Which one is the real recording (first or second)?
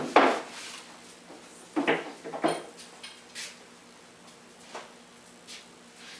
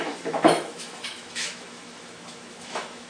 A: first